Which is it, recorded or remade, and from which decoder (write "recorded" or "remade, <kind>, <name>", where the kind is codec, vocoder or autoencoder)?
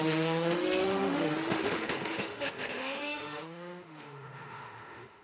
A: remade, autoencoder, DAC-VAE